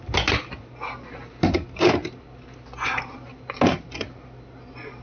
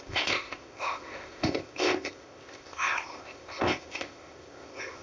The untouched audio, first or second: first